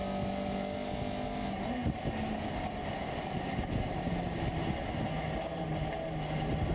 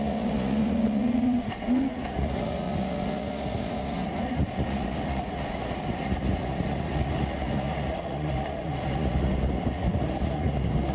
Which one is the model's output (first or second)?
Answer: second